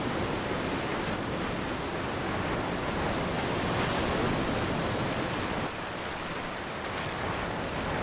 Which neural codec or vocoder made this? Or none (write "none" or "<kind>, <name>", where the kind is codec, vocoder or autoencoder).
none